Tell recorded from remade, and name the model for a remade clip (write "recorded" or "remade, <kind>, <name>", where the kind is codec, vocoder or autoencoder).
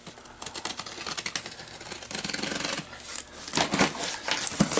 recorded